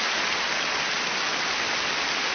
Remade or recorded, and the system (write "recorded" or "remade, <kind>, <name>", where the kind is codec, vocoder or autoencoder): recorded